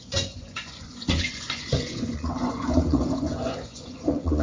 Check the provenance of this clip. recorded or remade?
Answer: remade